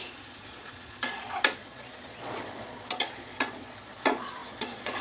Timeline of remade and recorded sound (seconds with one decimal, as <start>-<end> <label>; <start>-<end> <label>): 0.0-5.0 remade